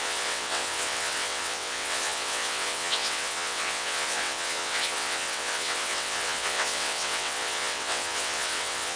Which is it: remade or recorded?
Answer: remade